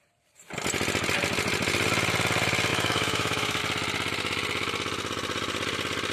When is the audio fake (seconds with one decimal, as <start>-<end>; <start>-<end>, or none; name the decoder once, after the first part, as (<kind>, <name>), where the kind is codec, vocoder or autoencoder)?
2.7-3.6 (autoencoder, DAC-VAE)